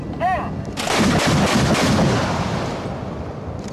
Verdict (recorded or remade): recorded